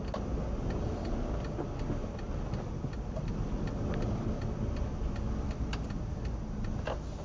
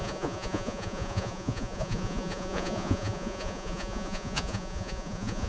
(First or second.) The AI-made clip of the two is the second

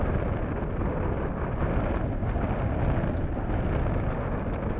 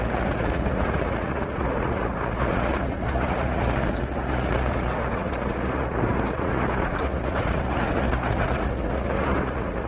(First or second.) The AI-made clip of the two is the second